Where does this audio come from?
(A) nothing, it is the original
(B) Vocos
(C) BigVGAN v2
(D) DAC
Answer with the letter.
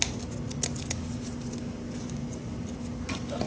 A